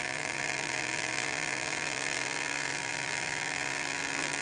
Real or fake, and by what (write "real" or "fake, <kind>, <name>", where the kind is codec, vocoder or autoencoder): fake, vocoder, BigVGAN v2